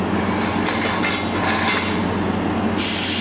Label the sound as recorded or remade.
recorded